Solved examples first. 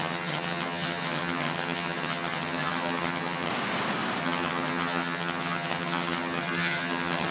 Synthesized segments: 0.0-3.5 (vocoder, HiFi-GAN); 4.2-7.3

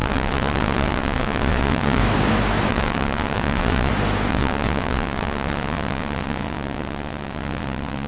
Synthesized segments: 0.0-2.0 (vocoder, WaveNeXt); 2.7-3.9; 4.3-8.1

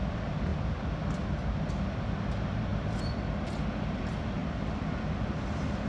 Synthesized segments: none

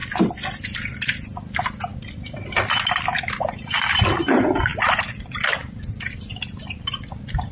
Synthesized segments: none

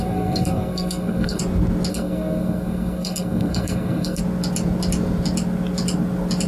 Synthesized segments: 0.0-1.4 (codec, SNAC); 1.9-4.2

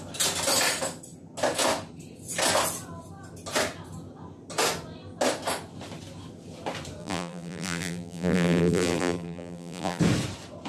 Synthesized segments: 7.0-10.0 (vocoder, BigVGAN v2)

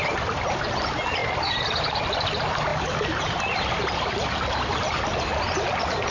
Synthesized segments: none

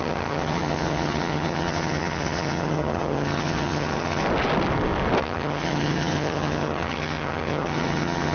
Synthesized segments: 0.0-4.2 (vocoder, HiFi-GAN); 5.2-8.3